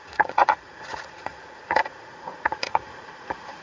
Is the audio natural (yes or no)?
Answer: no